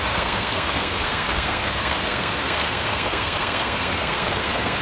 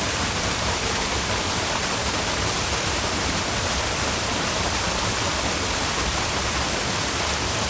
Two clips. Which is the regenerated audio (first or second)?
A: first